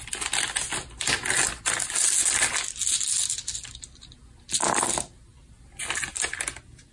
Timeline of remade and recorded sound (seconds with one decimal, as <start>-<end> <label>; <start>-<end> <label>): 0.0-6.9 recorded